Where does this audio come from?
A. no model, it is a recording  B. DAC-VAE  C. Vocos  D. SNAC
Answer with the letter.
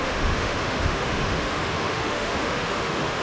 B